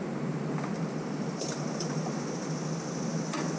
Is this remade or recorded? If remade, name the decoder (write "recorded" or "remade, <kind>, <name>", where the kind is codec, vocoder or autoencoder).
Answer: recorded